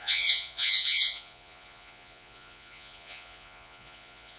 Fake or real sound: fake